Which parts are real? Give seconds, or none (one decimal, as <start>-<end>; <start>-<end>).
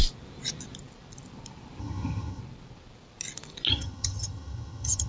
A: 0.0-1.8; 2.4-3.7